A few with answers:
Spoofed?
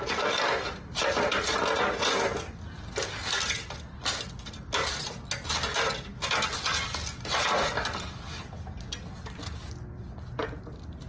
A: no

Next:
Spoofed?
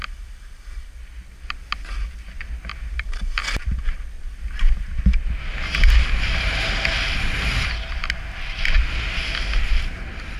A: no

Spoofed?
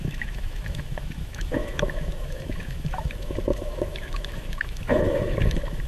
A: yes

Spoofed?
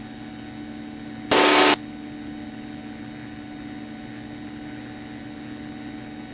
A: no